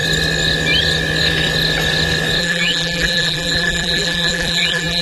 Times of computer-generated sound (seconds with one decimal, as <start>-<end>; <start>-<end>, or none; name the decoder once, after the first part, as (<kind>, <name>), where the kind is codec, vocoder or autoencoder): 2.4-5.0 (vocoder, BigVGAN v2)